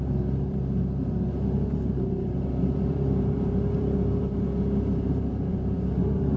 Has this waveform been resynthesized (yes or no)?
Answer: yes